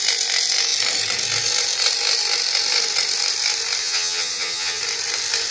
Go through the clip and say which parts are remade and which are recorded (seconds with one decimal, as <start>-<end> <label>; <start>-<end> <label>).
0.0-3.8 recorded; 3.8-4.8 remade; 4.8-5.5 recorded